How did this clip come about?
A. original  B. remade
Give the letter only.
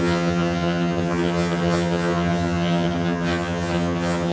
B